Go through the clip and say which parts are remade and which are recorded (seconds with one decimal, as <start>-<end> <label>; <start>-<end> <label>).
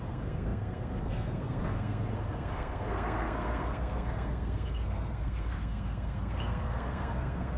0.0-7.6 remade